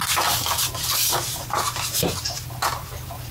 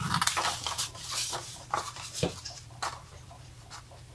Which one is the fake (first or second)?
second